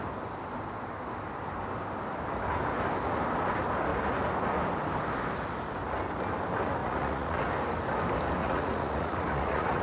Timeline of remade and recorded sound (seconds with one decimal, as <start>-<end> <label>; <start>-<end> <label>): 0.0-6.8 recorded; 6.8-7.4 remade; 7.4-8.4 recorded; 8.4-9.8 remade